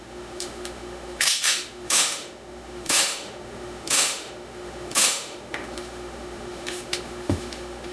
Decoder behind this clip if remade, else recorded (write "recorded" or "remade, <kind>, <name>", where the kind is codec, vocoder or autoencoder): remade, autoencoder, DAC-VAE